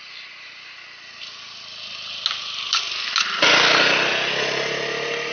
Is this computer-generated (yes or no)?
no